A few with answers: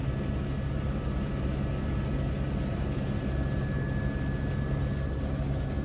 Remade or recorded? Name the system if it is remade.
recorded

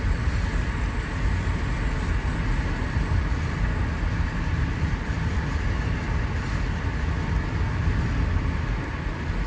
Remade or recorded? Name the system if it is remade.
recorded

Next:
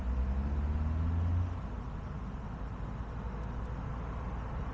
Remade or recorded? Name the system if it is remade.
recorded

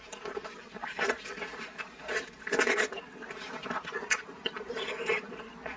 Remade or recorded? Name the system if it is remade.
remade, vocoder, BigVGAN v2